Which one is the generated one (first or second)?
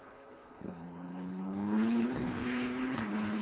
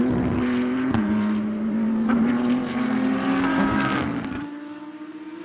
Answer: first